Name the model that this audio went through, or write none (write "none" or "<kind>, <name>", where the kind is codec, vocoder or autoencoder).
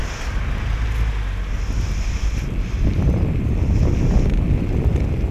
none